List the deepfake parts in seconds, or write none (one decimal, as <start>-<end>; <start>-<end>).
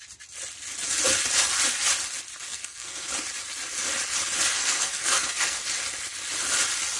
2.5-3.1; 4.5-5.6